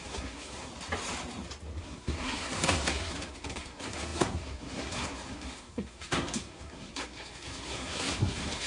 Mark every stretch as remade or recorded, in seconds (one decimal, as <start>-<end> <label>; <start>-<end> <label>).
0.0-0.7 remade; 0.7-1.8 recorded; 1.8-8.7 remade